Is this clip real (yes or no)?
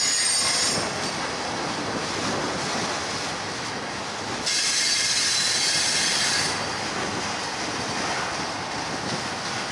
yes